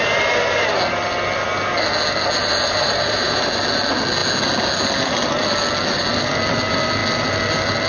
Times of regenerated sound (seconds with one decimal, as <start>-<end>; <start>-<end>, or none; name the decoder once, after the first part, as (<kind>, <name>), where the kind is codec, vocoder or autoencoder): 2.4-3.6 (vocoder, BigVGAN v2)